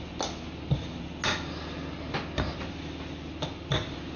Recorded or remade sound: recorded